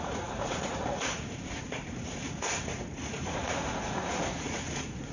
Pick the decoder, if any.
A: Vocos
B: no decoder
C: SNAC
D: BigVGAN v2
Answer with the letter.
A